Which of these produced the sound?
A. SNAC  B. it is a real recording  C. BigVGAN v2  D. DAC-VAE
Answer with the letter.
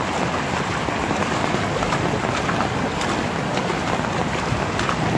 B